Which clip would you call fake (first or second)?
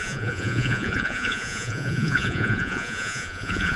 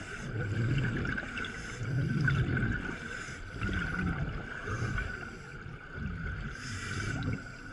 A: first